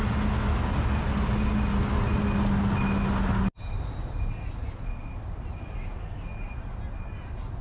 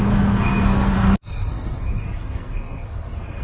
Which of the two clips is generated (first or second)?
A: second